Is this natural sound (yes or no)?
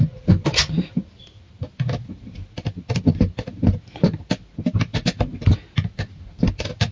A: yes